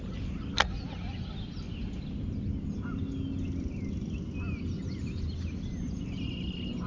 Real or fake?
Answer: real